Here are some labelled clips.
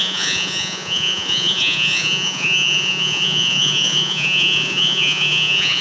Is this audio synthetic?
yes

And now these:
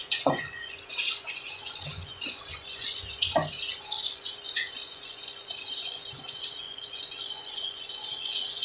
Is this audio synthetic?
yes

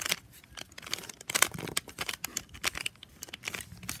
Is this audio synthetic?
no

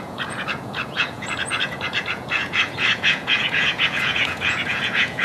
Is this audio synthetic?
yes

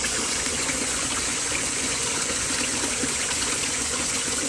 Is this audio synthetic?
yes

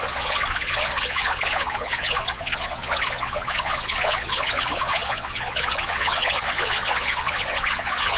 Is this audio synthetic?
yes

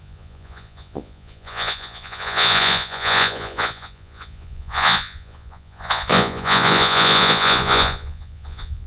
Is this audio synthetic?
yes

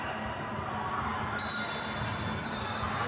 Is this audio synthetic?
no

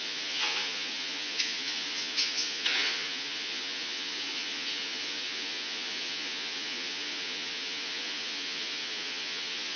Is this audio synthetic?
yes